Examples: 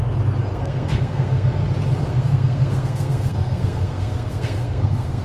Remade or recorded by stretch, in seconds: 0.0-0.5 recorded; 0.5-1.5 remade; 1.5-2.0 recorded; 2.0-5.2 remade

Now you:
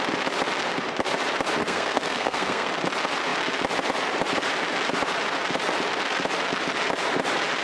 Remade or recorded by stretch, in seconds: 0.0-1.6 recorded; 1.6-2.7 remade; 2.7-7.6 recorded

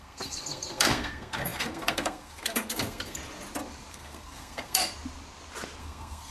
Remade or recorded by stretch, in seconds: 0.0-3.2 remade; 3.2-3.9 recorded; 3.9-4.8 remade; 4.8-5.8 recorded; 5.8-6.3 remade

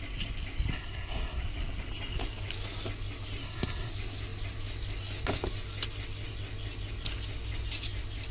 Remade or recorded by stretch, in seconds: 0.0-0.7 recorded; 0.7-1.4 remade; 1.4-3.4 recorded; 3.4-3.9 remade; 3.9-8.3 recorded

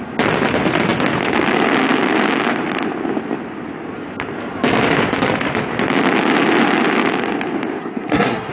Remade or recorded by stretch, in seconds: 0.0-7.8 recorded; 7.8-8.5 remade